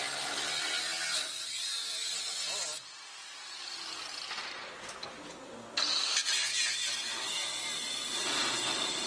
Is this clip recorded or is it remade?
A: recorded